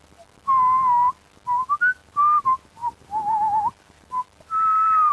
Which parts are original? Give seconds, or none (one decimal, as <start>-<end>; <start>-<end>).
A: 0.0-2.0